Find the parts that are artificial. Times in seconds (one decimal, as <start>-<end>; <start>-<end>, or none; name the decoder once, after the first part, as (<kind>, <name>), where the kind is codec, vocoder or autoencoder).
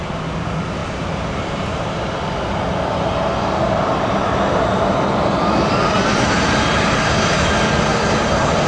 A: none